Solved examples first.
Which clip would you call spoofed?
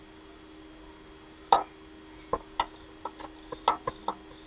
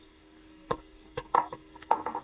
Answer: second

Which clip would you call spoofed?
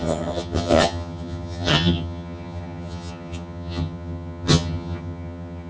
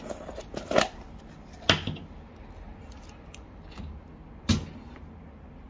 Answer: first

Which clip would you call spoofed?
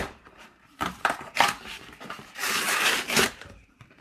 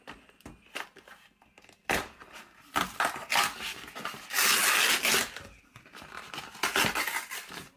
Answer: first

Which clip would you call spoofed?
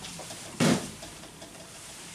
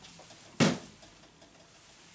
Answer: first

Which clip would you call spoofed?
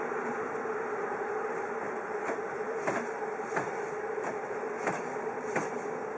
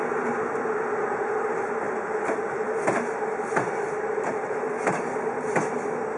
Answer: first